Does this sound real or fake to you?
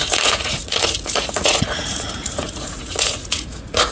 fake